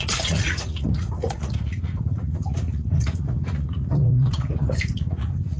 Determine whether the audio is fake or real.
fake